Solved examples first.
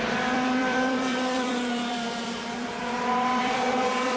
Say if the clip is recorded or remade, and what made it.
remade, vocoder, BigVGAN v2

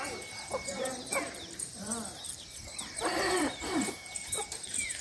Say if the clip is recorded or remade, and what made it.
remade, vocoder, BigVGAN v2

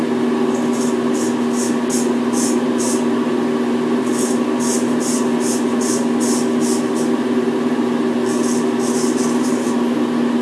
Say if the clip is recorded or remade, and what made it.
recorded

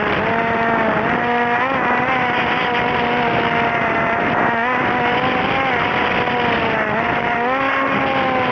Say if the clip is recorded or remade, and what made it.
remade, vocoder, BigVGAN v2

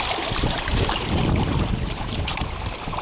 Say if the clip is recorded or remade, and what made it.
remade, vocoder, BigVGAN v2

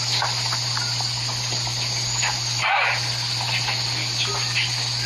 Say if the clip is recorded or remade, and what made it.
recorded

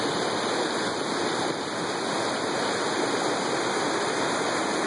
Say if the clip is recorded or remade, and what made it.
recorded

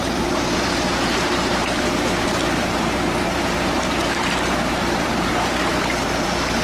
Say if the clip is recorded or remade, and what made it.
remade, vocoder, BigVGAN v2